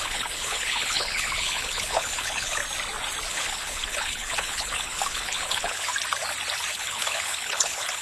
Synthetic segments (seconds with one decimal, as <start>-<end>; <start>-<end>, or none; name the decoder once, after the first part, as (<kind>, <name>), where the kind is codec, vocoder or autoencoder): 0.0-2.6 (codec, HILCodec); 3.3-5.9; 6.7-8.0